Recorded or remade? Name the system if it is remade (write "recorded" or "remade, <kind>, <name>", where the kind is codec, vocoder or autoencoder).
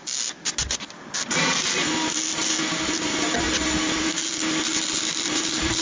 recorded